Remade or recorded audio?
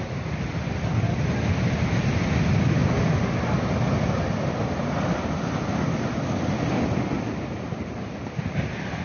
recorded